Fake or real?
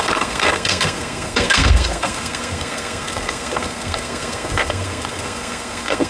fake